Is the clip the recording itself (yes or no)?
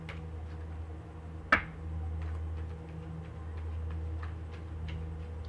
yes